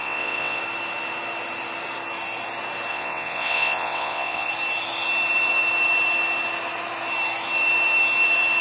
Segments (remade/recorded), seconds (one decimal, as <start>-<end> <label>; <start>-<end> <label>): 0.0-0.6 remade; 0.6-2.9 recorded; 2.9-4.5 remade; 4.5-8.6 recorded

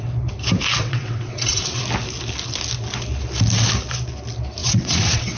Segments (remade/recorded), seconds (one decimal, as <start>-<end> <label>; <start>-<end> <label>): 0.0-0.8 recorded; 0.8-1.8 remade; 1.8-4.6 recorded; 4.6-5.4 remade

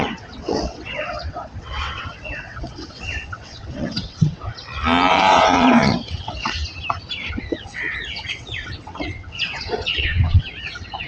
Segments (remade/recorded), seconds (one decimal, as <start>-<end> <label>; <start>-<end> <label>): 0.0-4.5 remade; 4.5-5.1 recorded; 5.1-6.6 remade; 6.6-7.3 recorded; 7.3-11.1 remade